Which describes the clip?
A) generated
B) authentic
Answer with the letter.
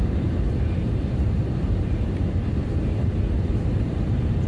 A